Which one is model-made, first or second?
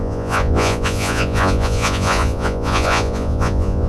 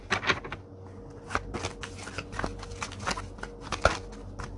first